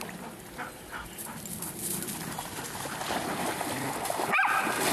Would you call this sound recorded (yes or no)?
yes